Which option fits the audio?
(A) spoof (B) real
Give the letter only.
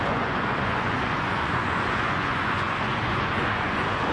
A